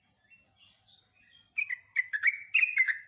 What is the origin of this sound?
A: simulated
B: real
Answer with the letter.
B